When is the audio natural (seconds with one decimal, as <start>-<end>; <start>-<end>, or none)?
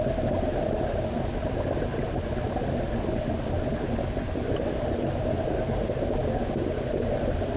0.0-6.2; 6.8-7.6